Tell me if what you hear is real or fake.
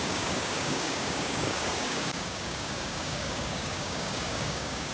fake